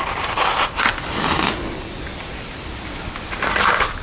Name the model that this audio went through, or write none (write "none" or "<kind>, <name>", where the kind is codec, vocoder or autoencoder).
none